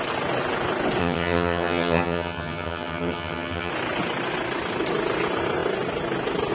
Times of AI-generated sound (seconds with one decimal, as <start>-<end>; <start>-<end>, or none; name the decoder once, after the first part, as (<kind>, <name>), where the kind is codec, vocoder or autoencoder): 1.0-3.7 (vocoder, HiFi-GAN)